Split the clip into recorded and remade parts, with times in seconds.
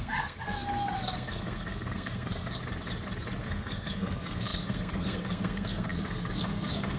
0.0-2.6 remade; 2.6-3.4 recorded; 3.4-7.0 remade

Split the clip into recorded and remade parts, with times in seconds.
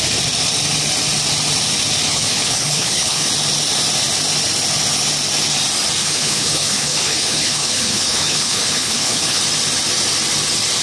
0.0-2.1 recorded; 2.1-3.3 remade; 3.3-6.0 recorded; 6.0-9.4 remade; 9.4-10.8 recorded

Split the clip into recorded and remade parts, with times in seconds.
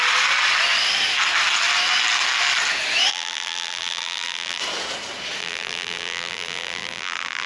0.0-3.1 recorded; 3.1-4.6 remade; 4.6-5.4 recorded; 5.4-7.5 remade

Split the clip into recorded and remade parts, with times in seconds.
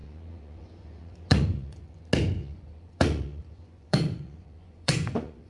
0.0-2.0 remade; 2.0-2.4 recorded; 2.4-5.5 remade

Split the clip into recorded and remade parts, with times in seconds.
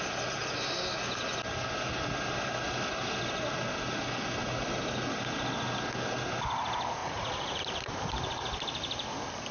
0.0-7.0 recorded; 7.0-7.6 remade; 7.6-9.5 recorded